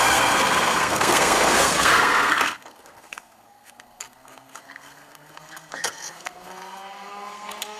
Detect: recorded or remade remade